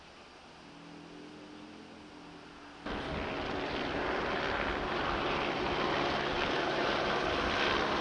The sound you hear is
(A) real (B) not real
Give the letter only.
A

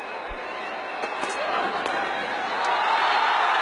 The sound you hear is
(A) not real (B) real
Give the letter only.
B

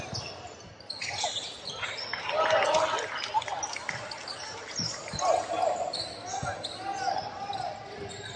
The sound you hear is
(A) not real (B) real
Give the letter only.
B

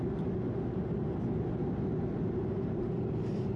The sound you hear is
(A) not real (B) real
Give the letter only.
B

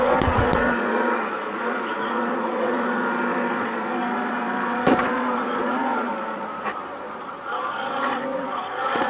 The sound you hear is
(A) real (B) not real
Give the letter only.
B